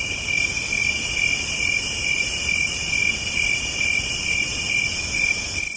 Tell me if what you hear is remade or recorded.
recorded